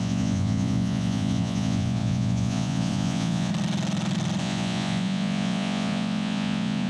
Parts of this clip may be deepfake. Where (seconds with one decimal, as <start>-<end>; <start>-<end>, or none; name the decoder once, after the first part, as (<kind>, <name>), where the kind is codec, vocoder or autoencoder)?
0.0-3.5 (vocoder, Vocos); 4.4-6.9